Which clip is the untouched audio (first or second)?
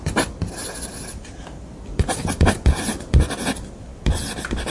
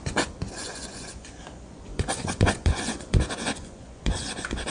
first